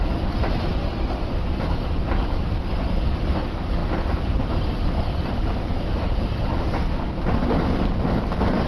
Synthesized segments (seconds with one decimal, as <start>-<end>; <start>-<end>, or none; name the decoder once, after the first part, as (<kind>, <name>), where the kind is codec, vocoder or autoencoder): none